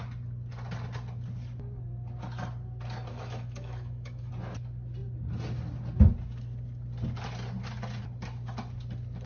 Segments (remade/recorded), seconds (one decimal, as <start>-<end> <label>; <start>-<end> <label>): 0.0-3.1 recorded; 3.1-4.3 remade; 4.3-9.3 recorded